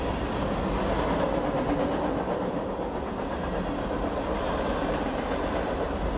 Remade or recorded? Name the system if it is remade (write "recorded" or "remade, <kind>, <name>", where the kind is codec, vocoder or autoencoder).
recorded